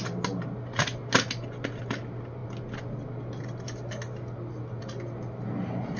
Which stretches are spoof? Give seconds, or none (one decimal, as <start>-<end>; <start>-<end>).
none